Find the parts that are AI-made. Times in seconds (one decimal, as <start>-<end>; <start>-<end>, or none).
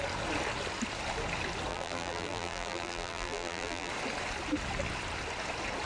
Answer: 1.7-3.9